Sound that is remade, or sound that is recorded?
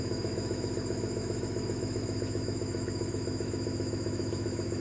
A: remade